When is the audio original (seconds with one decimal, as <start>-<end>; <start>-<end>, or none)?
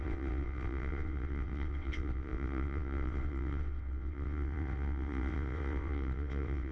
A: none